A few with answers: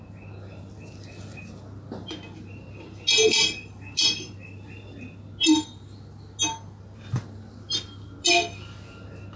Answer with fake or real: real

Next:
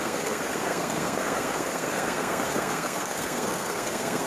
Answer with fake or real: fake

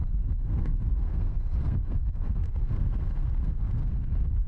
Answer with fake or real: fake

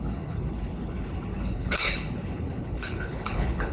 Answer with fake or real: fake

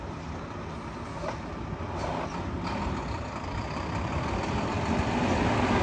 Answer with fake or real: real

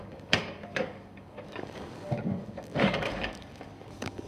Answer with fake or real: fake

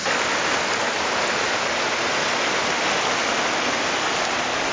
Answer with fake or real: real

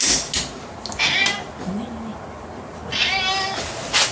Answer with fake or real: real